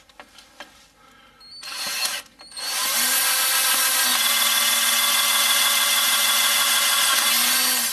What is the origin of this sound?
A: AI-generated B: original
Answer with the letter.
B